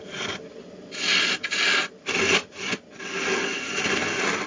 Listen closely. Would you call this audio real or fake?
real